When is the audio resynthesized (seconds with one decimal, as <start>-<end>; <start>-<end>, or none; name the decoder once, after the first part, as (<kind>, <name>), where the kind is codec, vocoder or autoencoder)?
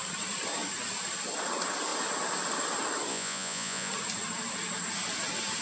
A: 3.1-3.9 (vocoder, Vocos)